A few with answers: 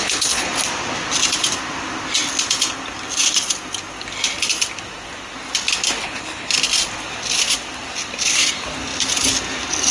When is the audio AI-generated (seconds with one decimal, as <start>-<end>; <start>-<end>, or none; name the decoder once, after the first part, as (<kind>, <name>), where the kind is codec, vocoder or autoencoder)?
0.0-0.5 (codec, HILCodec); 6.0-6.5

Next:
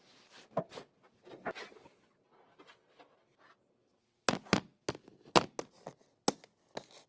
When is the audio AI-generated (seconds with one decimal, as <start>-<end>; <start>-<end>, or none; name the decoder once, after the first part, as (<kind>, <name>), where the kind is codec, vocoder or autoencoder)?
none

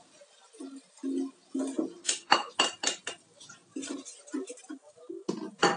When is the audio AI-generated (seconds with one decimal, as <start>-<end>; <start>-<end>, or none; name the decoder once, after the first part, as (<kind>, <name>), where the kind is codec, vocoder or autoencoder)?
2.0-2.5 (codec, HILCodec)